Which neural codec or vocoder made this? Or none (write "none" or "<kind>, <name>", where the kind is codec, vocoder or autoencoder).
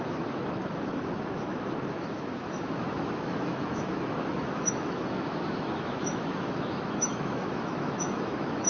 autoencoder, DAC-VAE